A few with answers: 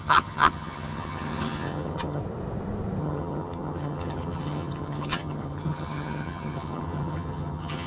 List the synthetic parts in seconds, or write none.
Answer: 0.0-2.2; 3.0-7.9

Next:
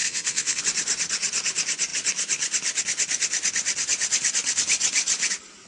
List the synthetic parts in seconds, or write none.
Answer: 0.0-0.6